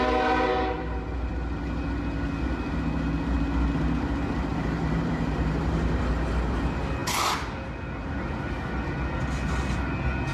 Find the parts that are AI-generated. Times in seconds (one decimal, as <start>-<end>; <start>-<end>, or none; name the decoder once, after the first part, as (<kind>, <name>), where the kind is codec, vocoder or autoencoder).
4.5-6.1 (vocoder, BigVGAN v2)